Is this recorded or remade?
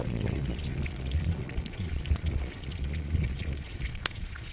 remade